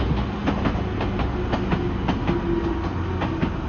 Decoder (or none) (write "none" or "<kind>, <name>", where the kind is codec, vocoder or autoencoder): none